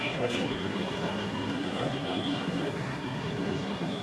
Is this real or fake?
fake